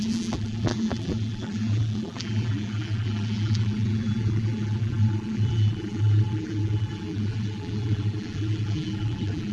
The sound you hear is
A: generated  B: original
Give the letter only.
A